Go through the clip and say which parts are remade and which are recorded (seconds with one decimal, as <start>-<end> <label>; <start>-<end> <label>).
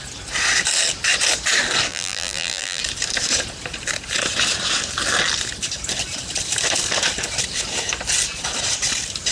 0.0-1.9 recorded; 1.9-2.8 remade; 2.8-9.3 recorded